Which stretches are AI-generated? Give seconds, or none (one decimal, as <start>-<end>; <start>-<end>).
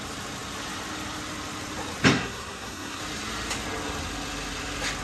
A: 2.1-3.0